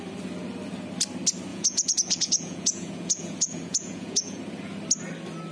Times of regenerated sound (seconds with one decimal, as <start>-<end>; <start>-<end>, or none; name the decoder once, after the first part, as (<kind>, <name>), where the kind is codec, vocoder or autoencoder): 1.5-4.4 (vocoder, Vocos)